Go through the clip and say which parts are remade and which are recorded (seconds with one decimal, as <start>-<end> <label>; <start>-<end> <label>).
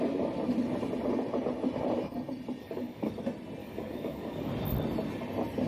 0.0-2.6 recorded; 2.6-3.1 remade; 3.1-3.6 recorded; 3.6-4.5 remade; 4.5-5.7 recorded